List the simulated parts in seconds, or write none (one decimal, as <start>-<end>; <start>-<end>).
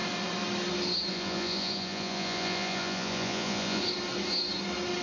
1.1-3.8